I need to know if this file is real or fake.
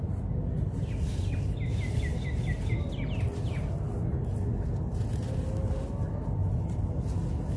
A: real